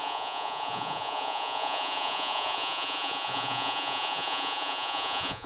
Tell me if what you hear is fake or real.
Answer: fake